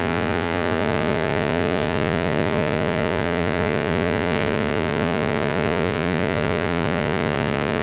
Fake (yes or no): yes